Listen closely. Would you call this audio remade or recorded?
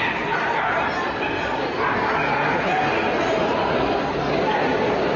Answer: recorded